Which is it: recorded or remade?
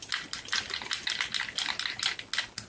recorded